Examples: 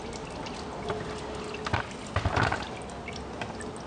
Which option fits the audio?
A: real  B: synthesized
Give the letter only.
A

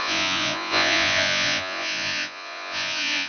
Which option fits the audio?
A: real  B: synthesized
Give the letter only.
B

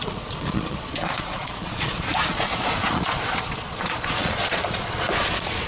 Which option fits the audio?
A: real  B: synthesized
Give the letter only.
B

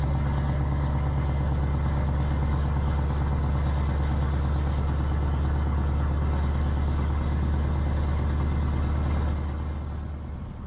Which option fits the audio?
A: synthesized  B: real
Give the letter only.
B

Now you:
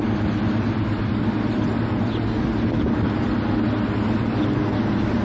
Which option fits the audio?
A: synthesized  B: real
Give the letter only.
B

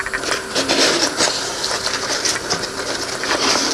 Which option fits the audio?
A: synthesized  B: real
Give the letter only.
B